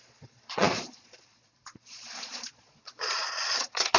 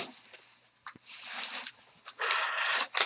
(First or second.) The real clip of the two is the second